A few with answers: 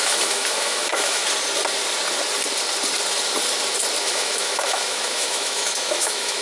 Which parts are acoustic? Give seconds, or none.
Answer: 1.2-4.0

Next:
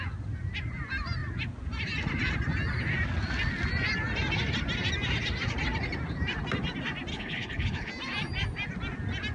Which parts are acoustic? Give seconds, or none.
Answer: 0.0-7.1; 7.9-9.3

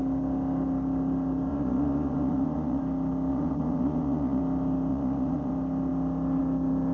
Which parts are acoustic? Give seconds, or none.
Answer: 0.0-1.5; 2.8-3.3; 4.4-4.9; 5.5-6.9

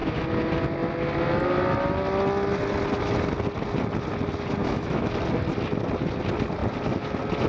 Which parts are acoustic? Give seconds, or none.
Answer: 0.0-4.6; 5.1-7.5

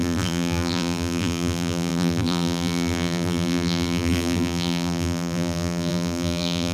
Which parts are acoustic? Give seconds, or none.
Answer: none

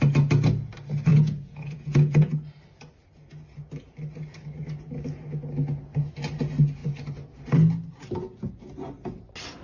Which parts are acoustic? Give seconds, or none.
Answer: 0.0-1.1; 2.3-9.6